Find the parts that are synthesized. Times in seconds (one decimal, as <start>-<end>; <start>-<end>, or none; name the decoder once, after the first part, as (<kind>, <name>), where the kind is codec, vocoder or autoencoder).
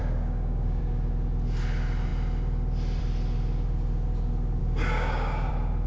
0.0-0.8 (codec, DAC); 4.6-5.5